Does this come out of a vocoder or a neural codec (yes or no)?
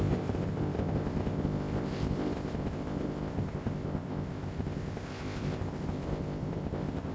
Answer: yes